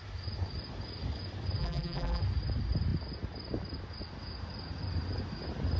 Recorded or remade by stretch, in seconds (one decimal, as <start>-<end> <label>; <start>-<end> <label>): 0.0-1.6 recorded; 1.6-2.2 remade; 2.2-5.8 recorded